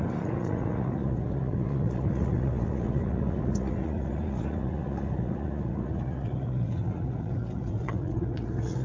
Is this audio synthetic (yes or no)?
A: yes